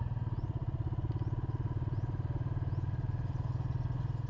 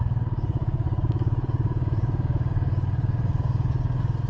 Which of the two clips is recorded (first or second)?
first